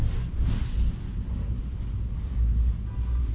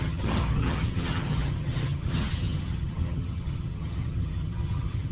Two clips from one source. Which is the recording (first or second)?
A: first